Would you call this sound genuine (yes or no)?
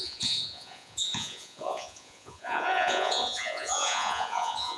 no